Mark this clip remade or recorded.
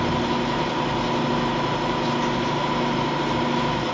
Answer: recorded